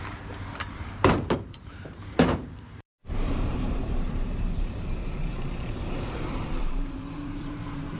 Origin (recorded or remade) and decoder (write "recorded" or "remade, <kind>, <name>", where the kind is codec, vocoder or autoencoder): remade, vocoder, BigVGAN v2